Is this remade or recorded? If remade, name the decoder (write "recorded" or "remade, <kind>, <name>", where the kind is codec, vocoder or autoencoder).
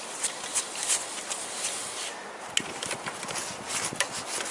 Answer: recorded